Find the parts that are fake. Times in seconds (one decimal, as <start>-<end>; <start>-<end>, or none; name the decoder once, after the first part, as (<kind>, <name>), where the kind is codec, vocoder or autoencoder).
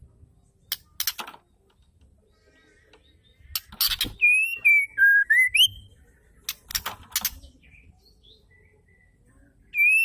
none